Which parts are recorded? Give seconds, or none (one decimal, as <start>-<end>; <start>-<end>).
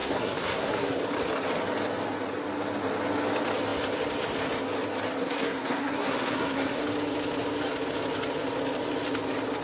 1.0-5.2; 6.8-9.6